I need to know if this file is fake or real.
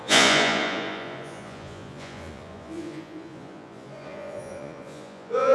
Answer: fake